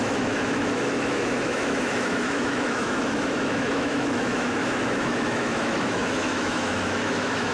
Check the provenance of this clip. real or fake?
fake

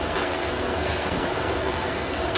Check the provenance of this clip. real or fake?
fake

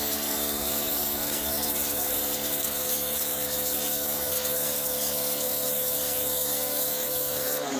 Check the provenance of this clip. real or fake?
fake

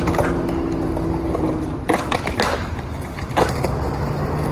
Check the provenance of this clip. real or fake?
real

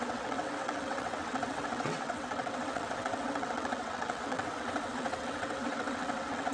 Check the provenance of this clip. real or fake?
fake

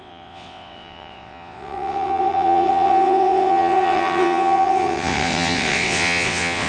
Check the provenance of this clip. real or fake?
fake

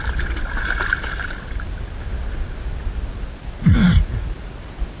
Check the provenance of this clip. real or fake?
real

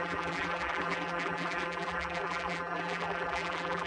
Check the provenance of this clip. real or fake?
fake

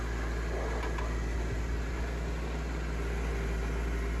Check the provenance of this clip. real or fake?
real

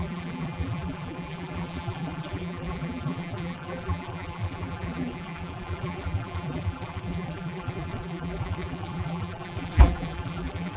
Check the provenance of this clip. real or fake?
fake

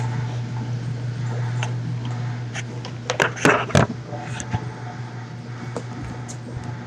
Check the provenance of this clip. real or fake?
real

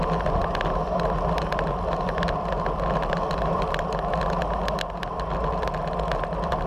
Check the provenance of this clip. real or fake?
real